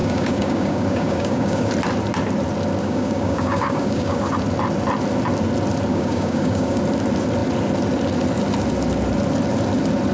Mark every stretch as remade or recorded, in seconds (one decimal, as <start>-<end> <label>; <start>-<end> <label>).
0.0-1.7 remade; 1.7-2.8 recorded; 2.8-4.2 remade; 4.2-5.9 recorded; 5.9-6.8 remade; 6.8-10.1 recorded